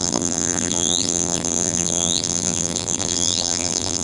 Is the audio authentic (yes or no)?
no